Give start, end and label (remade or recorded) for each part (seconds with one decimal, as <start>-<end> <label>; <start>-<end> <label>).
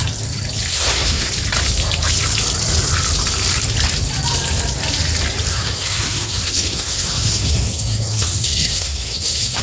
0.0-0.7 recorded; 0.7-1.3 remade; 1.3-5.5 recorded; 5.5-9.6 remade